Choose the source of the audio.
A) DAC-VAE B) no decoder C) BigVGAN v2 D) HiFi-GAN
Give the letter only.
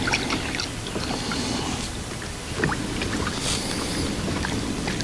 B